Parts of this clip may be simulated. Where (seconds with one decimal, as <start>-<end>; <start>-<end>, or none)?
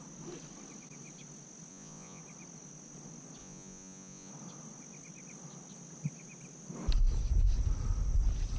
1.7-2.2; 3.4-4.3